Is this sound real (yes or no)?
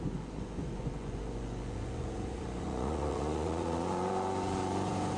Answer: no